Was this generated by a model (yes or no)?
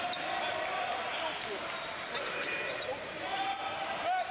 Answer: no